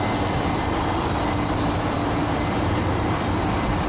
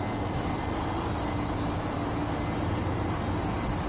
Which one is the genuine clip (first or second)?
second